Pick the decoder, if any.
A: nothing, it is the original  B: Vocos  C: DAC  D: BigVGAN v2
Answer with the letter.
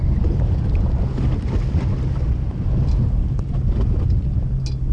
A